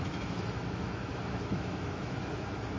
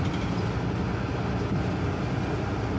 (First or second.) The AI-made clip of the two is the first